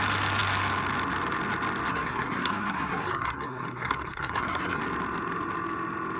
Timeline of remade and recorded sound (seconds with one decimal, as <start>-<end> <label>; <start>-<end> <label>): 0.0-1.9 recorded; 1.9-4.8 remade; 4.8-6.2 recorded